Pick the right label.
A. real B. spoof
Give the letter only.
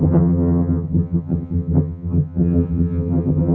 B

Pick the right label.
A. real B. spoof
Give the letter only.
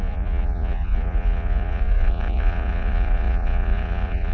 B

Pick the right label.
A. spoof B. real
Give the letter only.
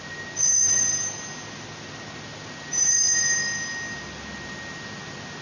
B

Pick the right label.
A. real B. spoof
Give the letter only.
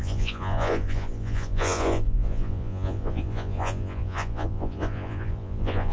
B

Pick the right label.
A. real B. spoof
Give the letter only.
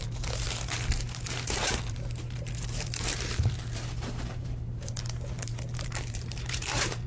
B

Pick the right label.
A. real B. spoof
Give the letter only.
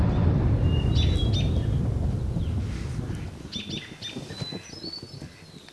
A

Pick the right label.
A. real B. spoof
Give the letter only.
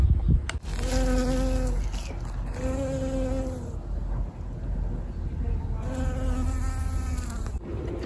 A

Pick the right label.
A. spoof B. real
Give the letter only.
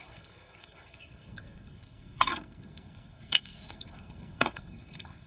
A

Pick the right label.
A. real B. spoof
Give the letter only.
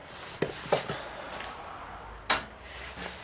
A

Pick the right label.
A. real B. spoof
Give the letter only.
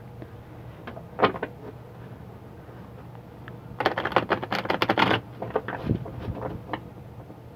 A